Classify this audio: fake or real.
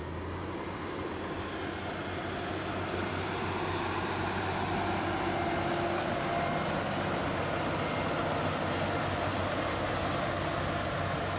real